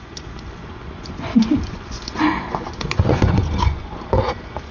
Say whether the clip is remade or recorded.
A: remade